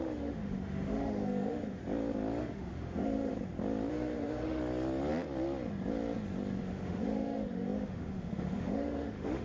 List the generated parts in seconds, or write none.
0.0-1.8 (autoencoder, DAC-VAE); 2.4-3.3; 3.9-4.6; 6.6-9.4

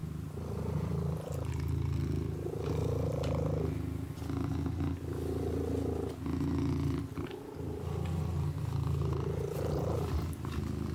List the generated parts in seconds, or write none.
none

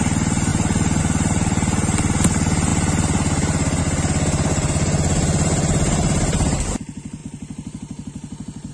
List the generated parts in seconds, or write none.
none

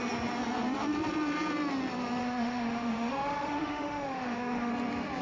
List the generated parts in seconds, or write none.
2.2-4.7 (autoencoder, DAC-VAE)

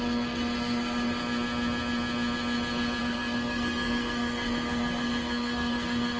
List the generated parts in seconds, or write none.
0.0-1.2 (codec, SNAC); 3.0-6.2

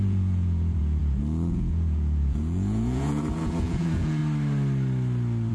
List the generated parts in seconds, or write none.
0.0-4.2 (vocoder, Vocos)

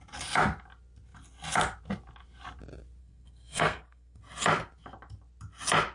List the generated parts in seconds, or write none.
3.0-4.2 (codec, SNAC)